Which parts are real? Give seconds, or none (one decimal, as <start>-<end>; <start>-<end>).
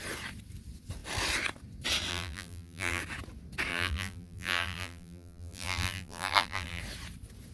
0.0-2.1; 3.0-3.7; 6.8-7.5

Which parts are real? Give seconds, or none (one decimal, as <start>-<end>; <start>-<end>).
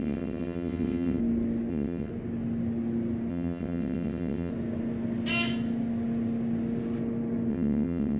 1.2-1.7; 2.1-3.3; 4.5-7.5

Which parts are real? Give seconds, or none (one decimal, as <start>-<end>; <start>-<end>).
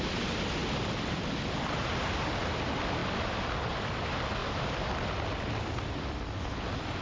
0.0-0.6; 2.3-3.0; 4.0-4.4; 5.8-7.0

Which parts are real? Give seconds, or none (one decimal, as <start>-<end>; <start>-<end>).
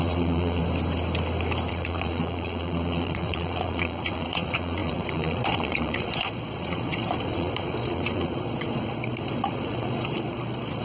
0.6-1.7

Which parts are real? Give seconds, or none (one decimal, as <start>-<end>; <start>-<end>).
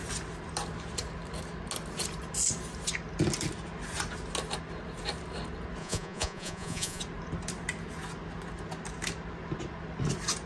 0.0-5.8; 7.0-10.5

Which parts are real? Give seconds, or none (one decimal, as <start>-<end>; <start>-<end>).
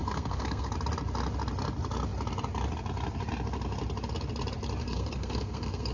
0.7-4.8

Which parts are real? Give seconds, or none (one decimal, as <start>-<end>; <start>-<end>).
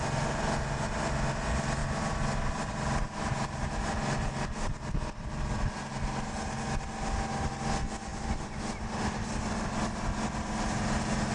0.0-8.1; 8.6-11.3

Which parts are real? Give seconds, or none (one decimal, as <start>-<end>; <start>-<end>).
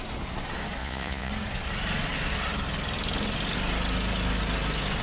0.0-0.8; 1.3-5.0